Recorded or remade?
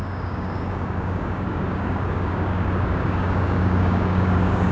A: remade